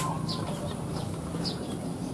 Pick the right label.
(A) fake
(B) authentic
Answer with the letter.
B